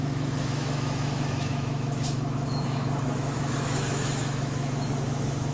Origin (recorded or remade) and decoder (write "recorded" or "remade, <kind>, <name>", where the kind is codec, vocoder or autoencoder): remade, autoencoder, DAC-VAE